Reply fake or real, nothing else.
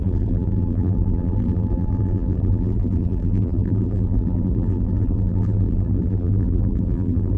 fake